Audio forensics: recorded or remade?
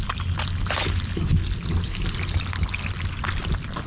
recorded